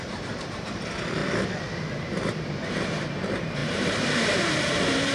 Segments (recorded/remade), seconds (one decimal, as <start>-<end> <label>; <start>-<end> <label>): 0.0-5.1 remade